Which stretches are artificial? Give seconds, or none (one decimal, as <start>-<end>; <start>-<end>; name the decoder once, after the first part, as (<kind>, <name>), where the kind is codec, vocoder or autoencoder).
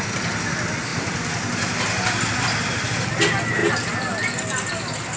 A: 3.6-4.3 (vocoder, BigVGAN v2)